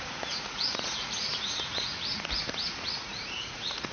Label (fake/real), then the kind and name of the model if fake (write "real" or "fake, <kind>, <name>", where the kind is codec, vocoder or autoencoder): fake, vocoder, Vocos